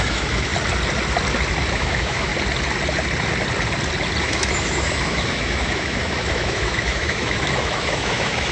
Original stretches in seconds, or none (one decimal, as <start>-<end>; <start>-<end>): 0.5-1.7; 2.3-4.2